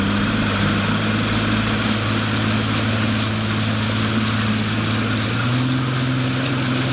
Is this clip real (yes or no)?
yes